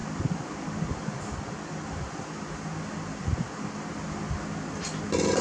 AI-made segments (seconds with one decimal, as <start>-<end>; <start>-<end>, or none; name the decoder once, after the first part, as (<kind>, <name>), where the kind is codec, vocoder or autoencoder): none